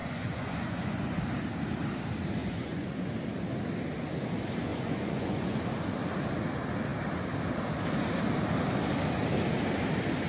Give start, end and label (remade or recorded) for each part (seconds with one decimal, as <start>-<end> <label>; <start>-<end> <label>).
0.0-1.2 remade; 1.2-2.4 recorded; 2.4-3.1 remade; 3.1-4.7 recorded; 4.7-5.6 remade; 5.6-10.3 recorded